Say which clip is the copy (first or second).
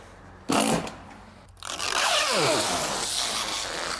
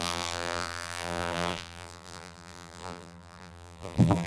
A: second